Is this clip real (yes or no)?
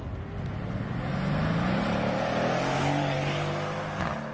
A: yes